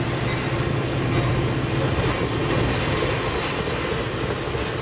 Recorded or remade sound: recorded